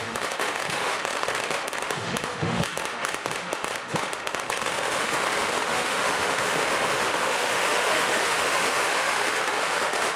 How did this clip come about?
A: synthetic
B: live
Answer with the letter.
A